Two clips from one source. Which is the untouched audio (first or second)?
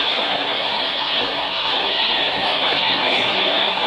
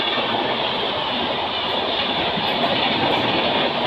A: second